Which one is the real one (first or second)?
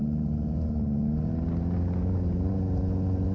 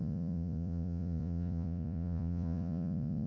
first